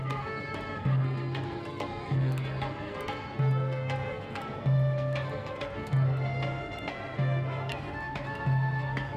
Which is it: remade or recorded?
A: remade